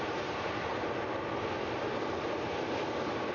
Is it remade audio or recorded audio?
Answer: recorded